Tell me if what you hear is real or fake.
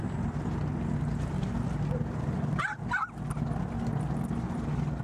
real